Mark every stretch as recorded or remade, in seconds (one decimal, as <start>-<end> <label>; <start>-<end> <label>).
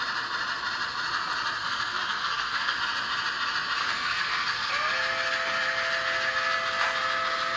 0.0-1.6 recorded; 1.6-2.8 remade; 2.8-3.8 recorded; 3.8-4.7 remade; 4.7-7.6 recorded